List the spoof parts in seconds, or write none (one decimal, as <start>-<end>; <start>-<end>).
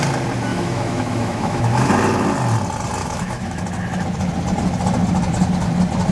0.5-1.9; 3.0-3.6